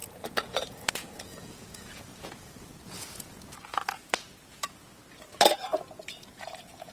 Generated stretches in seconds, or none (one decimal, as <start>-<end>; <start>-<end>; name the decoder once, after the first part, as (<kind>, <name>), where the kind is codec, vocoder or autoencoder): 0.0-6.9 (vocoder, Vocos)